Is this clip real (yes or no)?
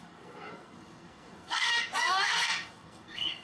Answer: no